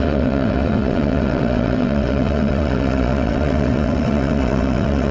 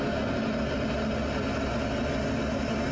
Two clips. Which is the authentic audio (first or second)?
second